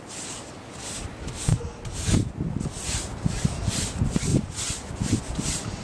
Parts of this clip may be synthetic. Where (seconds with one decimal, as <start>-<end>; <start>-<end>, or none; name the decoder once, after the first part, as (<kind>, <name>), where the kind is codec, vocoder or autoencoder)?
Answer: none